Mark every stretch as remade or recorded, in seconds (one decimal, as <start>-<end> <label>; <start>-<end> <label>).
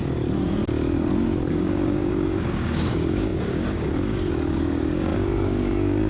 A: 0.0-1.5 recorded; 1.5-6.1 remade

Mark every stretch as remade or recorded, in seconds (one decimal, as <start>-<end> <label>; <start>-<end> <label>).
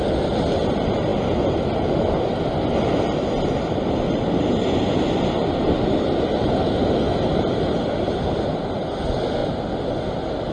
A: 0.0-10.5 recorded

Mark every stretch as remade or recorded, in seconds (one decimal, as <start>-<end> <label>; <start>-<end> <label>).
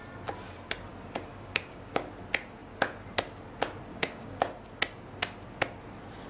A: 0.0-1.3 recorded; 1.3-2.1 remade; 2.1-3.9 recorded; 3.9-4.4 remade; 4.4-6.3 recorded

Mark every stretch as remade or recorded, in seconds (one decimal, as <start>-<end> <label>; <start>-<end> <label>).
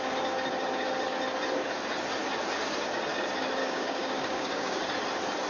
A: 0.0-3.6 recorded; 3.6-4.8 remade; 4.8-5.5 recorded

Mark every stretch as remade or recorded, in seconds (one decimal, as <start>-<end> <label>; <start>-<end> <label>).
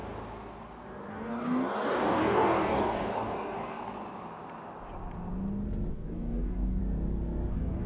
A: 0.0-1.1 recorded; 1.1-3.8 remade; 3.8-5.9 recorded; 5.9-6.8 remade; 6.8-7.5 recorded; 7.5-7.9 remade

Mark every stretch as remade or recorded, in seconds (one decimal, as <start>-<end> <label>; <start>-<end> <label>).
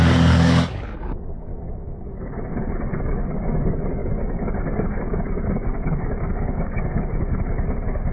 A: 0.0-1.5 remade; 1.5-2.1 recorded; 2.1-8.1 remade